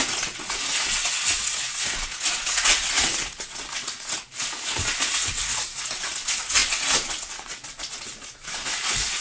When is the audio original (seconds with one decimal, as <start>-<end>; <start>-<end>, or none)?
none